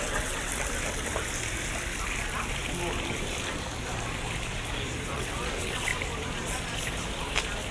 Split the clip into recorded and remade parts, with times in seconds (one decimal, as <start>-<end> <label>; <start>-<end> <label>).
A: 0.0-0.5 remade; 0.5-5.1 recorded; 5.1-5.9 remade; 5.9-7.7 recorded